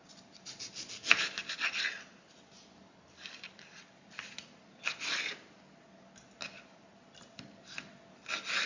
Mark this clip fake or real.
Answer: real